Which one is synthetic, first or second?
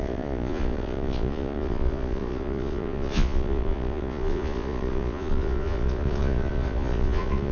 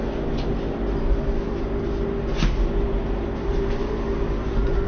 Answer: first